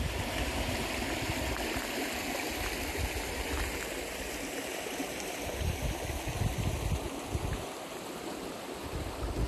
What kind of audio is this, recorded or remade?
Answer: recorded